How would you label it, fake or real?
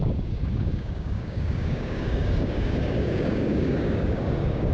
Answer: fake